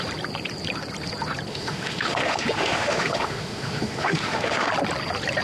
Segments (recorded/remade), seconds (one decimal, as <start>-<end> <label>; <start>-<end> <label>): 0.0-1.5 recorded; 1.5-4.7 remade; 4.7-5.4 recorded